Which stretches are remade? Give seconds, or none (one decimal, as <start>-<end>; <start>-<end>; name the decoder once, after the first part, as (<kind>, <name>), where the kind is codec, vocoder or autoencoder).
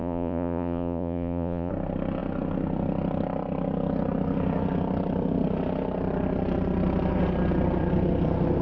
0.0-1.7 (vocoder, Vocos)